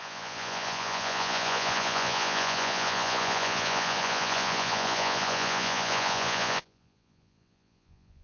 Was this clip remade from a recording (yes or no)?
yes